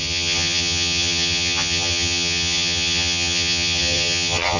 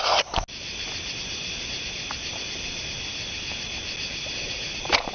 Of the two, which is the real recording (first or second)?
second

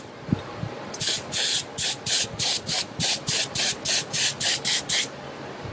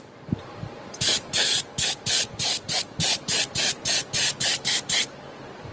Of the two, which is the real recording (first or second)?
first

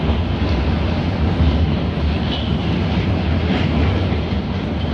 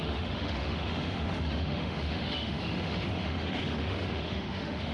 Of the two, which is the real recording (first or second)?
first